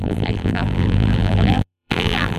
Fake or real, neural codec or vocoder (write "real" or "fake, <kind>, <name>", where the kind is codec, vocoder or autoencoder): fake, vocoder, BigVGAN v2